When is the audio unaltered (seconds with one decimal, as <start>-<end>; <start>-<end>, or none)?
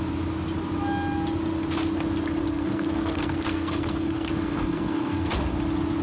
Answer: 0.0-2.4; 5.3-6.0